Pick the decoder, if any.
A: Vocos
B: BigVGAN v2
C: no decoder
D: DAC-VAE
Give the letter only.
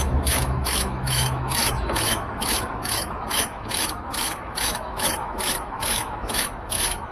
D